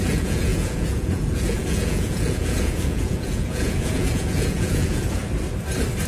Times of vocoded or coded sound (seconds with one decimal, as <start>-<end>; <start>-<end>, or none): 0.0-5.2